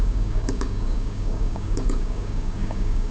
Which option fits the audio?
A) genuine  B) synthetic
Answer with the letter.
B